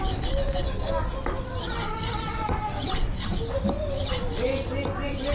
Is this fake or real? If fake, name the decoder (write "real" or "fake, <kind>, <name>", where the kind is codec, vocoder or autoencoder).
real